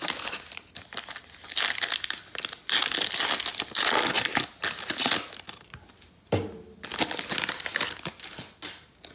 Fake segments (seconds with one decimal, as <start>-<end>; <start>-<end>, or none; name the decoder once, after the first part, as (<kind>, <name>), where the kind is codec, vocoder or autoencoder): none